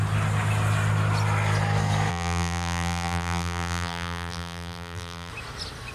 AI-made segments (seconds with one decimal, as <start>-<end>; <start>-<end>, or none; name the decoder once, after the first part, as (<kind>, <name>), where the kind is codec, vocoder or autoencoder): 2.1-5.3 (vocoder, BigVGAN v2)